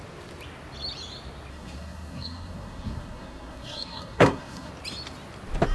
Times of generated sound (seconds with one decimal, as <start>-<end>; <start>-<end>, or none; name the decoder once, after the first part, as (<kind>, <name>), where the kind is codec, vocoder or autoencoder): 1.5-4.7 (codec, SNAC)